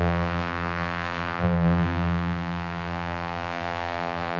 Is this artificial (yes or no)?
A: yes